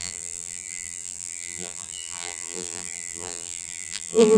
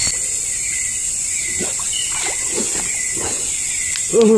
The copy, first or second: first